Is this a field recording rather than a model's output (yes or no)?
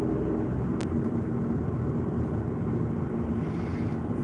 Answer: yes